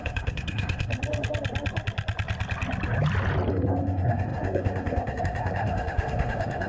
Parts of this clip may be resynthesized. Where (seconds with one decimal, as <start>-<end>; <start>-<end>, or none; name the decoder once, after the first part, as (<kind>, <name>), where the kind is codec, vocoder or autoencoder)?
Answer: 0.0-0.9 (codec, SNAC); 3.5-6.7